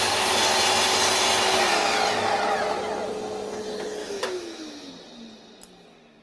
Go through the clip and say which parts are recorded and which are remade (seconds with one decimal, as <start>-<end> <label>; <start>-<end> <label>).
0.0-4.0 recorded; 4.0-4.9 remade; 4.9-6.2 recorded